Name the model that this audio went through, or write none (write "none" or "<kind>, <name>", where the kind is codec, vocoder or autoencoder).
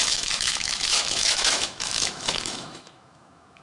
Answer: autoencoder, DAC-VAE